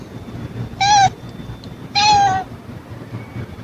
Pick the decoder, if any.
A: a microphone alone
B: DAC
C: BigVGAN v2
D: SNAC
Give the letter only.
A